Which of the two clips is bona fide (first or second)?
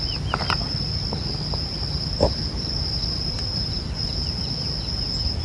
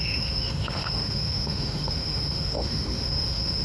first